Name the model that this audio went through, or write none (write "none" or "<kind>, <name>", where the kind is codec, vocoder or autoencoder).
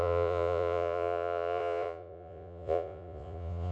vocoder, Vocos